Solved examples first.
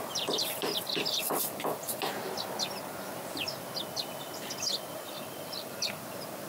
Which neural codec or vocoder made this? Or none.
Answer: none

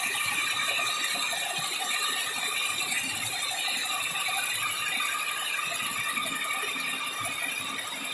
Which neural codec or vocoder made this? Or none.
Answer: none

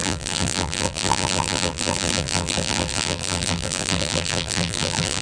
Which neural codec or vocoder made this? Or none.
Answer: vocoder, BigVGAN v2